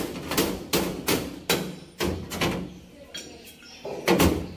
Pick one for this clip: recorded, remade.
recorded